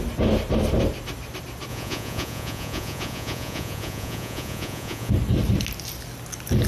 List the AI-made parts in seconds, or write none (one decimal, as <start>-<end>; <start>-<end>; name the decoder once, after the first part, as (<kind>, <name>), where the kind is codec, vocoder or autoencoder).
1.7-5.1 (vocoder, Vocos)